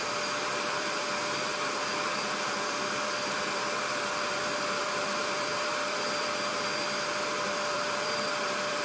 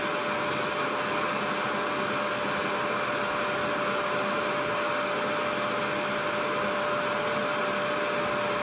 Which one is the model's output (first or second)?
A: first